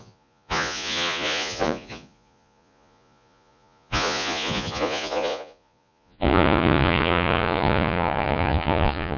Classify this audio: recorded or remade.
remade